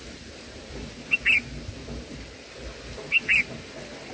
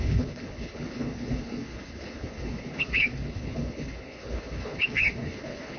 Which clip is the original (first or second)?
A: first